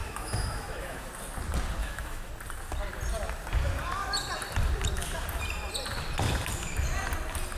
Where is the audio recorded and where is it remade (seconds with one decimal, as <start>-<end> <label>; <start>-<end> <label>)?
0.0-1.1 remade; 1.1-1.8 recorded; 1.8-2.3 remade; 2.3-7.6 recorded